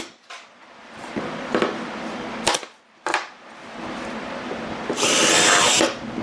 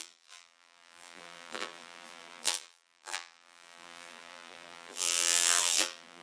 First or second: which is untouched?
first